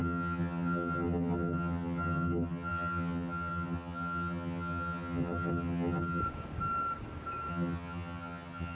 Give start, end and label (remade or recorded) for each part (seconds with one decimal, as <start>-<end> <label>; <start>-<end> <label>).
0.0-6.2 remade; 6.2-7.5 recorded; 7.5-8.8 remade